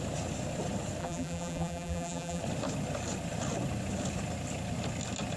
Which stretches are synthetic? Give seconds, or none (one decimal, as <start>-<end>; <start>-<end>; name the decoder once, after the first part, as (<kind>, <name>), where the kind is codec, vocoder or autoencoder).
1.0-2.4 (vocoder, BigVGAN v2)